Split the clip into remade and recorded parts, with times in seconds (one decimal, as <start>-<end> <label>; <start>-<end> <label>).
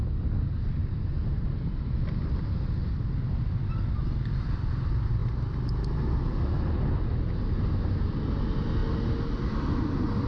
0.0-10.3 recorded